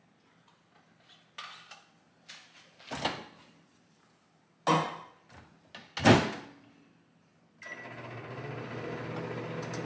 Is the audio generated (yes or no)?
no